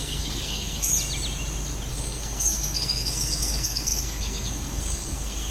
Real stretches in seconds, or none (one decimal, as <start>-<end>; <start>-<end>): 0.9-1.9